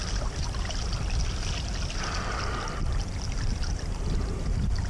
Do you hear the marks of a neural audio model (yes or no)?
no